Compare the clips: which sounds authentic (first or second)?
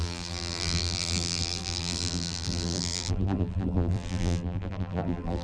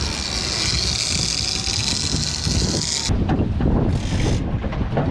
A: second